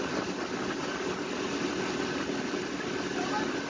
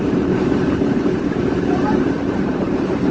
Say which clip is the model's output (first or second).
second